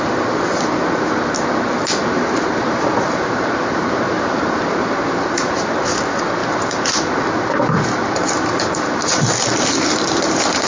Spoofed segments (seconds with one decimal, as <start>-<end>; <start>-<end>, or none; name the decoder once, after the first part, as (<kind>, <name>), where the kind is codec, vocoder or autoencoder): 2.0-6.0 (vocoder, BigVGAN v2); 6.4-10.7